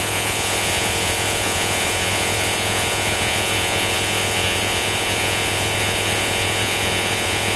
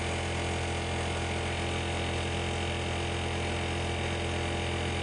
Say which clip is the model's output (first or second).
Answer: first